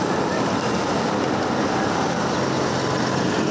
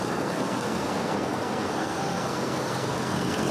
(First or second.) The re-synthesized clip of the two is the second